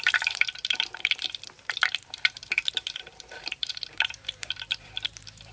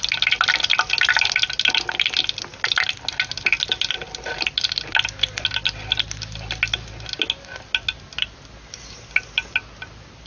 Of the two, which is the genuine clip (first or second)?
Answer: second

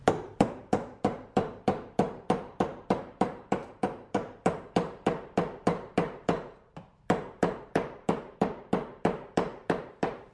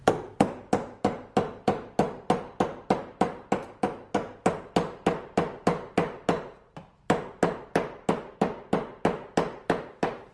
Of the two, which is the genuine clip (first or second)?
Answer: second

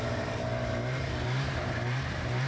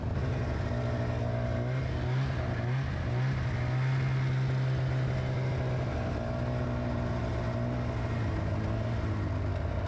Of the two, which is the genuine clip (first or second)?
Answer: second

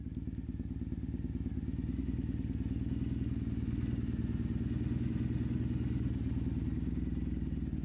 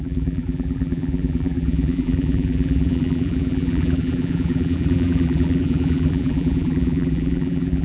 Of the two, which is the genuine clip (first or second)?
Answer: first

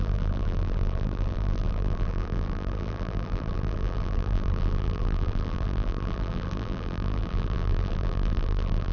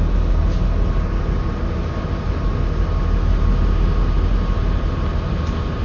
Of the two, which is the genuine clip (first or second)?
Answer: second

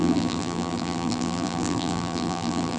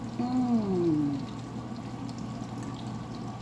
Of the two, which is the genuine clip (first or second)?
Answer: second